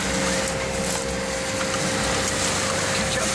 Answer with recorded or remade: recorded